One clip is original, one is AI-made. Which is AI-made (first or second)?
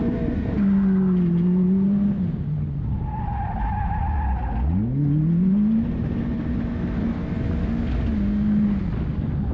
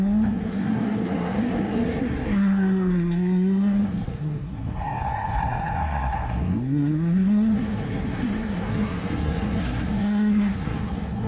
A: second